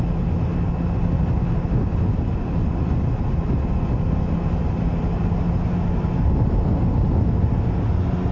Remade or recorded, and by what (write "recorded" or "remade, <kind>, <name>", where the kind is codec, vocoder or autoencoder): recorded